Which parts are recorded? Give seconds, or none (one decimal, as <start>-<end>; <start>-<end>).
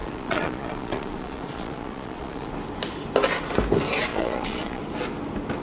2.5-4.1; 4.8-5.6